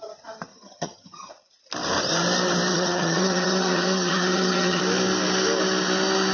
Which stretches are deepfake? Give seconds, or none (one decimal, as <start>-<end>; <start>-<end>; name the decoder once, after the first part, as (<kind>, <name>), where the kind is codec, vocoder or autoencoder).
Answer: 0.5-1.3 (vocoder, HiFi-GAN); 2.7-4.8